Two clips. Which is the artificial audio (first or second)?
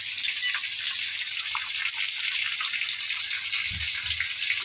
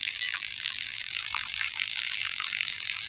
second